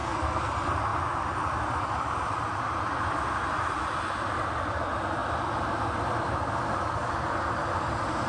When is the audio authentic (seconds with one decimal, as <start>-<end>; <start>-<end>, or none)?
0.5-8.3